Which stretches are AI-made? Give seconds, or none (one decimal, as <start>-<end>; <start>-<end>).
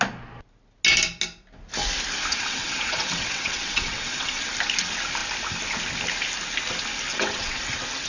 2.3-4.5; 7.1-7.6